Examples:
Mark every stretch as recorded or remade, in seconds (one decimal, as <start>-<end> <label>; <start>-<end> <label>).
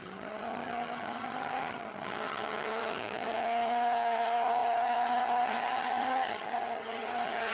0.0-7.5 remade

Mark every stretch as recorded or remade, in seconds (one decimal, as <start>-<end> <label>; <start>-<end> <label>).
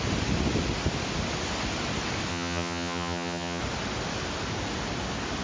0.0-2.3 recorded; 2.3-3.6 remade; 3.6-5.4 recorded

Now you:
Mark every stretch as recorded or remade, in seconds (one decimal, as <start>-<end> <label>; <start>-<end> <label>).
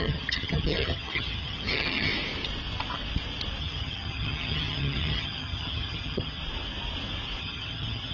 0.0-2.1 remade; 2.1-3.6 recorded; 3.6-6.4 remade; 6.4-7.4 recorded; 7.4-8.1 remade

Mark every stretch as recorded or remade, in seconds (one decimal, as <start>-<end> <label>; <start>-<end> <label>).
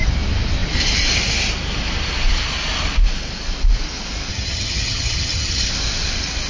0.0-4.3 recorded; 4.3-5.7 remade; 5.7-6.5 recorded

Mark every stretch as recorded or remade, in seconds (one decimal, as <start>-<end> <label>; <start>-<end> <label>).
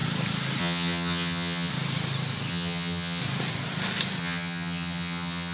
0.0-0.6 recorded; 0.6-1.7 remade; 1.7-2.5 recorded; 2.5-3.2 remade; 3.2-4.2 recorded; 4.2-5.5 remade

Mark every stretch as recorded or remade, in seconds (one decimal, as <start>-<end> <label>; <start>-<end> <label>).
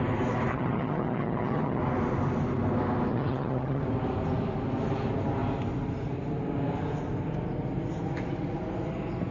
0.0-0.5 recorded; 0.5-1.8 remade; 1.8-3.1 recorded; 3.1-3.8 remade; 3.8-9.3 recorded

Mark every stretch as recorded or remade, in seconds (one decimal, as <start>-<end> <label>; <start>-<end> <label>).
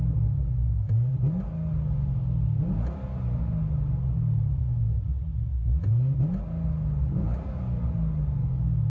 0.0-8.9 recorded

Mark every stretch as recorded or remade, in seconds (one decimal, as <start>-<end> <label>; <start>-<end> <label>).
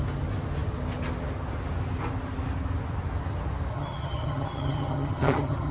0.0-3.7 recorded; 3.7-5.7 remade